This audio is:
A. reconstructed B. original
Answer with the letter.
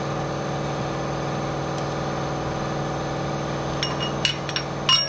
B